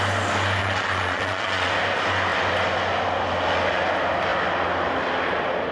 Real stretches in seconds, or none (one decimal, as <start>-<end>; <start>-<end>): 0.0-0.6; 1.7-5.7